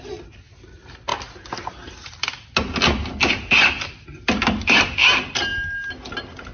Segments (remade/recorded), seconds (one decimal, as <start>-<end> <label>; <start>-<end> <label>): 0.0-6.5 recorded